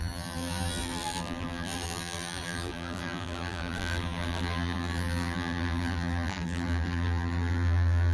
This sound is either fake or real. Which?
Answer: fake